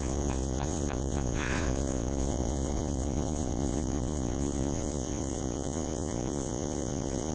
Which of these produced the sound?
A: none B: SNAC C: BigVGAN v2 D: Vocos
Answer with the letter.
D